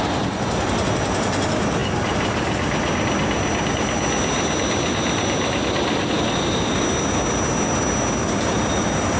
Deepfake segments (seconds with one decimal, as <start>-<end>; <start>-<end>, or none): none